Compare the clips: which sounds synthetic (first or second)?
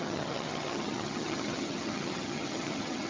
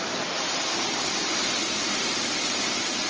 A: first